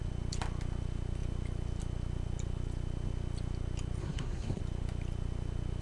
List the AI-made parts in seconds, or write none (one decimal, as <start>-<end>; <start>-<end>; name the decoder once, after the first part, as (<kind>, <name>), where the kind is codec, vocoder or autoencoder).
4.0-4.6 (codec, SNAC)